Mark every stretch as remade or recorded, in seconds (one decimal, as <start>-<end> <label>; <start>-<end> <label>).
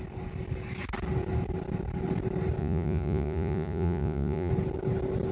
0.0-2.6 recorded; 2.6-4.5 remade; 4.5-5.3 recorded